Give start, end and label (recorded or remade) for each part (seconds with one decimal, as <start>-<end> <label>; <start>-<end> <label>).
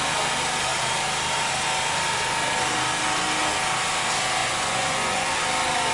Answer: 0.0-4.4 recorded; 4.4-5.4 remade; 5.4-5.9 recorded